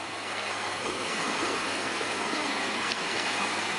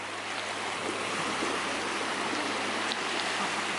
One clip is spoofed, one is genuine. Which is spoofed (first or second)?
first